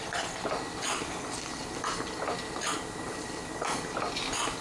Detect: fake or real real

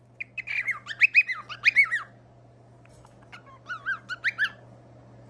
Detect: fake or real real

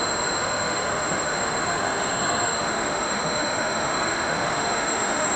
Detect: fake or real fake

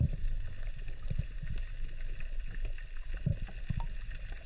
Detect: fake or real real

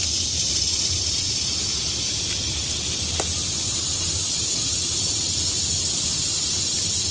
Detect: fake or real real